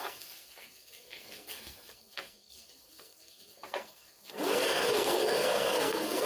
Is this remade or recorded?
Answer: remade